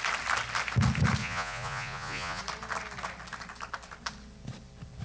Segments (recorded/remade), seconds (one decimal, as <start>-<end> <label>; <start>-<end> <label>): 0.0-1.2 recorded; 1.2-2.4 remade; 2.4-5.0 recorded